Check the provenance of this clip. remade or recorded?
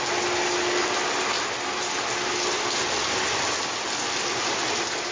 recorded